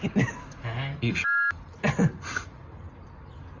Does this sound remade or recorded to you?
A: recorded